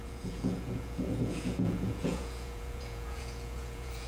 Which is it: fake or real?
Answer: fake